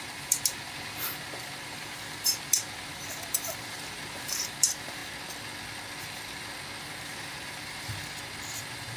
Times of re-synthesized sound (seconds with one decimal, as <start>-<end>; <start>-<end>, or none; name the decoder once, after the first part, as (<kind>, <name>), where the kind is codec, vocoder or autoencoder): 0.0-5.0 (vocoder, BigVGAN v2); 6.8-8.0; 8.6-9.0